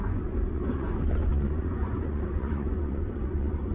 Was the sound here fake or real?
fake